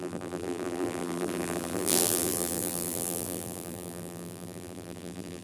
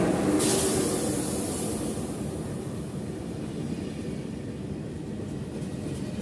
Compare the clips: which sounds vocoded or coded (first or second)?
first